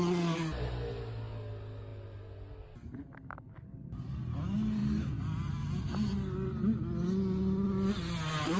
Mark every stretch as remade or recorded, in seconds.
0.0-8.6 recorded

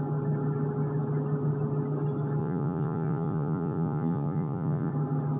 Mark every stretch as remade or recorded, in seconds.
0.0-2.4 recorded; 2.4-4.9 remade; 4.9-5.4 recorded

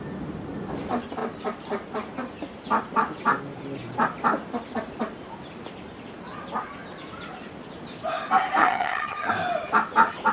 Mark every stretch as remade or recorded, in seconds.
0.0-8.6 recorded; 8.6-9.3 remade; 9.3-10.3 recorded